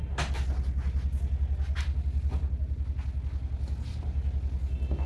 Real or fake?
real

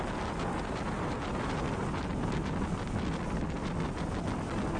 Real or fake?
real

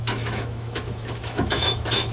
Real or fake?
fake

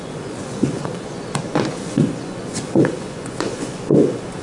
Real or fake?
fake